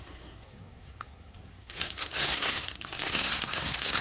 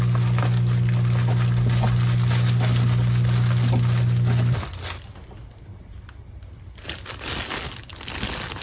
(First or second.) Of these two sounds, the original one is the second